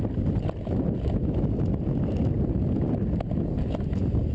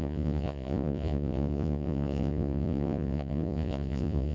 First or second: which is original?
first